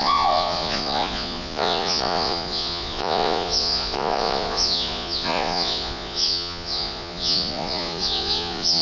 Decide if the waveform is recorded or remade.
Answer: remade